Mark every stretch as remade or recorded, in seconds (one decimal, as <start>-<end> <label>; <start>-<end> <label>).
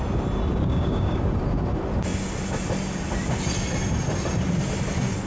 0.0-0.6 recorded; 0.6-1.2 remade; 1.2-5.3 recorded